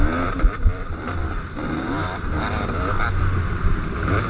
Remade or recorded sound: recorded